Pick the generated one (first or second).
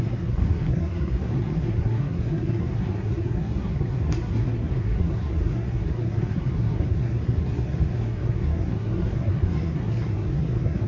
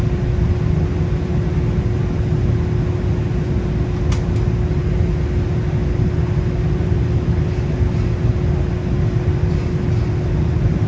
first